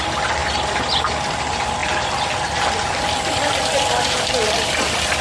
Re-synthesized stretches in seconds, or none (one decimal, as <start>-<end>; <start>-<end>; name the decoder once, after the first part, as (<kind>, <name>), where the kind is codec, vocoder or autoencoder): none